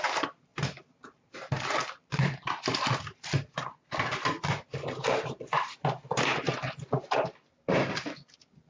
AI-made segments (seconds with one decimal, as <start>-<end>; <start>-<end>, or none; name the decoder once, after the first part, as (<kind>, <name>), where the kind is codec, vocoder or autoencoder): none